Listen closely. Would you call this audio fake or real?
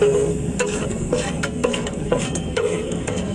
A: fake